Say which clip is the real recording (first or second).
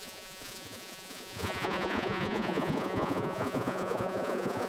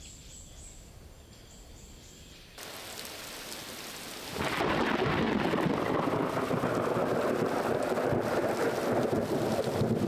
second